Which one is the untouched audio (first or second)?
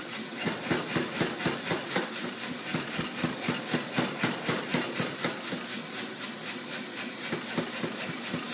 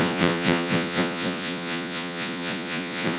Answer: first